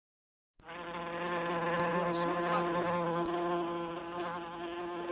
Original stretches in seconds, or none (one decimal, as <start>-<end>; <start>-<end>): 0.0-5.1